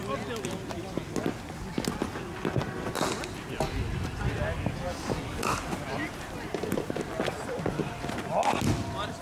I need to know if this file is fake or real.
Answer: real